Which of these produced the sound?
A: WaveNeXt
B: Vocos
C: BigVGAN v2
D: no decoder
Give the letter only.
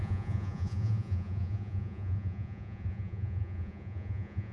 B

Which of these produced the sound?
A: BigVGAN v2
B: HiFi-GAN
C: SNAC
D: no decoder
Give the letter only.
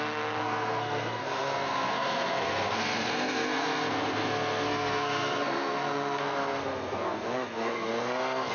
C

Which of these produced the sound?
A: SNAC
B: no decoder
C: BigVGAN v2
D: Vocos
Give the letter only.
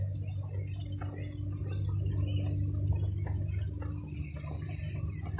B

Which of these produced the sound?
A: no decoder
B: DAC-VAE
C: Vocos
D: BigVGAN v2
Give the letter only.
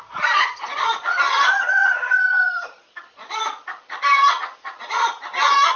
C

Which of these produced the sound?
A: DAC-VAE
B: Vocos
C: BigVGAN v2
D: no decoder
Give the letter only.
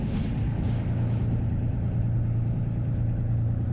D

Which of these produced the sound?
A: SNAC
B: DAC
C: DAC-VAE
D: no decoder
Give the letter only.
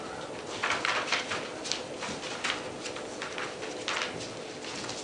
D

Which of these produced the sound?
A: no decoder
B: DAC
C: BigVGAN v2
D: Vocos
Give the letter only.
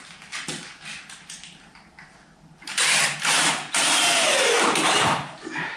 A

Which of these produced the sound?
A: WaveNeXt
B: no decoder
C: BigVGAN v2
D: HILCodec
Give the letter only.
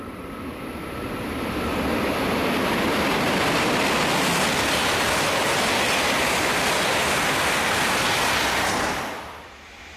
B